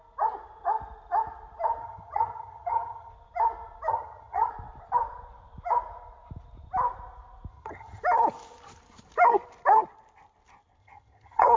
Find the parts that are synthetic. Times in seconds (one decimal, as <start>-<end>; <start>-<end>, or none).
1.8-3.1; 3.9-4.5; 7.5-8.0; 10.8-11.6